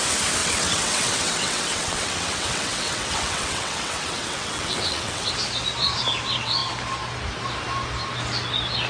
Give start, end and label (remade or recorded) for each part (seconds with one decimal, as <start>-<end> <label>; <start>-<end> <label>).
0.0-0.4 recorded; 0.4-5.3 remade; 5.3-8.9 recorded